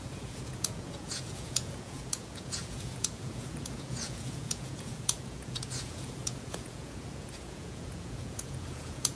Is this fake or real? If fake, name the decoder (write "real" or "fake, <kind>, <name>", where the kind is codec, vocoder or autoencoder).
fake, vocoder, Vocos